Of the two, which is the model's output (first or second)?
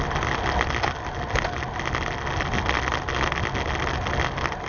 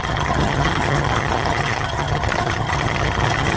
second